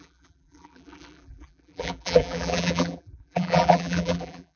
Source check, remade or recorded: remade